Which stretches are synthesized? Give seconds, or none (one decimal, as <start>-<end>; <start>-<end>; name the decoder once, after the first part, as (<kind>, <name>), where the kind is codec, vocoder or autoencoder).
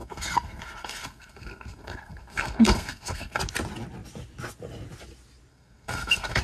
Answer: 0.0-3.4 (codec, SNAC); 5.5-6.4